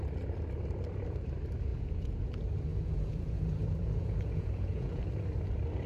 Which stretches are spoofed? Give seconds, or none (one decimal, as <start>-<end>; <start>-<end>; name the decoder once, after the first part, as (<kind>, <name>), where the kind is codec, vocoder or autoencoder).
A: 1.7-2.3 (vocoder, Vocos); 2.7-5.0